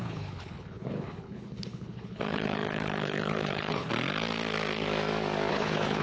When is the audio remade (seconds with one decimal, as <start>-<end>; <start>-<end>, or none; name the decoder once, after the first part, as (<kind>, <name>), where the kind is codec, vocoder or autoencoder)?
0.0-3.9 (codec, HILCodec); 5.5-6.0